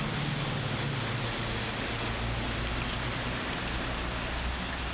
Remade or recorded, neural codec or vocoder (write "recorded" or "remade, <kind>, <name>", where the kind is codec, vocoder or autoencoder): recorded